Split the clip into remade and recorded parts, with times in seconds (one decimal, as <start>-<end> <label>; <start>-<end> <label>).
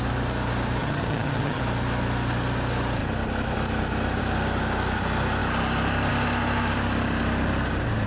0.0-0.8 recorded; 0.8-1.6 remade; 1.6-8.1 recorded